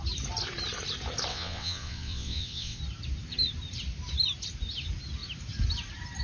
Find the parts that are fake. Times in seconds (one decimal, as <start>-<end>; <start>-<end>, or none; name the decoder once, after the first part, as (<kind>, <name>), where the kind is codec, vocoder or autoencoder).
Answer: 1.3-2.8 (vocoder, WaveNeXt)